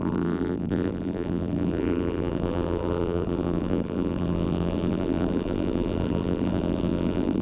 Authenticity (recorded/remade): remade